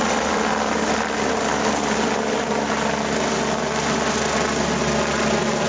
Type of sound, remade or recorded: recorded